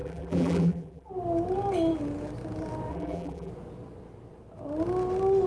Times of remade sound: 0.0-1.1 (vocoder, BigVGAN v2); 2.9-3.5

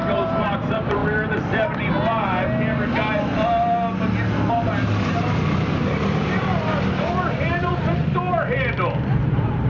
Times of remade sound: 0.0-1.0 (vocoder, BigVGAN v2); 4.5-8.0; 9.1-9.7

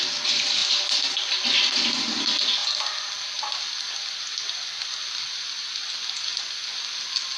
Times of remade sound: none

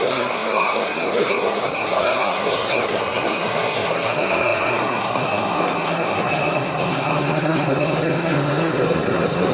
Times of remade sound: 0.0-9.5 (codec, SNAC)

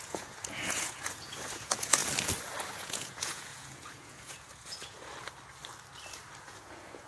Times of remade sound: 0.0-2.0 (vocoder, Vocos); 2.8-5.1; 6.4-7.1